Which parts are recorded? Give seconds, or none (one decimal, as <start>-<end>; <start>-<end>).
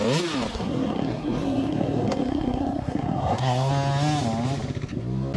0.0-0.5; 3.7-5.4